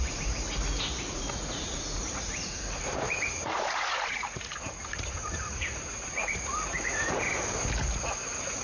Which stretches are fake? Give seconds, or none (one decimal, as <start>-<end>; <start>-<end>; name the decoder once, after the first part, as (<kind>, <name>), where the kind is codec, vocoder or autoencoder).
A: 0.0-7.3 (vocoder, Vocos); 7.8-8.6

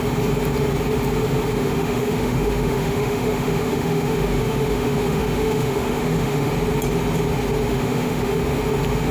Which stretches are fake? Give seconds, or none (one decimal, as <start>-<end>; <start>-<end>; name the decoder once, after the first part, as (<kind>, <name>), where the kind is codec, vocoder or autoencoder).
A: 1.6-6.5 (autoencoder, DAC-VAE); 7.7-8.4

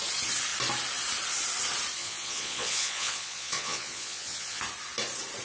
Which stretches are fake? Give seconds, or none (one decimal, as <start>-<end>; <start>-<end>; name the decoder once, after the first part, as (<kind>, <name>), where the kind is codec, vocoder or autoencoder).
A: 2.0-4.6 (vocoder, Vocos)

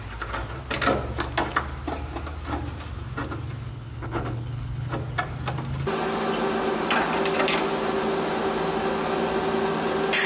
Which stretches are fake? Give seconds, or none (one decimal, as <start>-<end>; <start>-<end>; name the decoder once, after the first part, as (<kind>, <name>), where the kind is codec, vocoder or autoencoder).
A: 3.7-4.9 (codec, HILCodec)

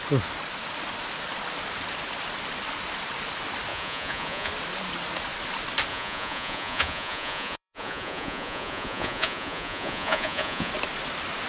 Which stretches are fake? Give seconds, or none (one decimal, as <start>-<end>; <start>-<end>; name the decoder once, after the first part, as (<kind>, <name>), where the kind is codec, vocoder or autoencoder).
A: 3.7-4.5 (vocoder, Vocos); 5.9-10.7